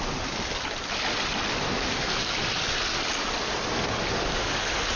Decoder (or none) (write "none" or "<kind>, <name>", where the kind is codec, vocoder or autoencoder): none